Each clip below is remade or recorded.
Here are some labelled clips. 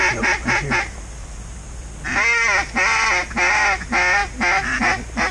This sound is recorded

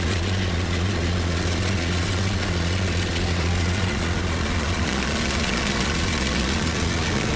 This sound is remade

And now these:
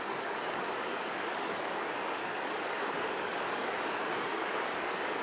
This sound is remade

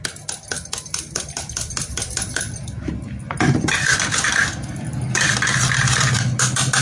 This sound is recorded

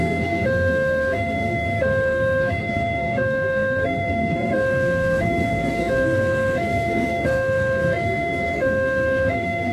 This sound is remade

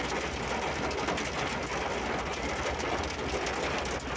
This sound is recorded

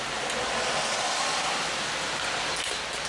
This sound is recorded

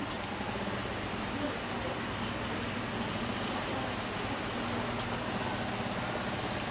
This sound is recorded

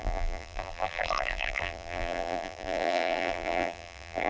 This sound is remade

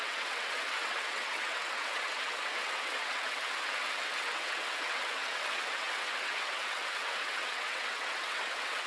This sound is remade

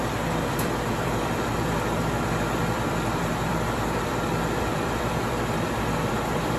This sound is remade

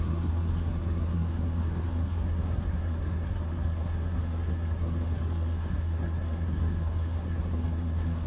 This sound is remade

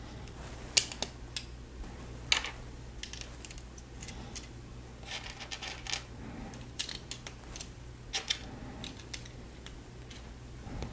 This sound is recorded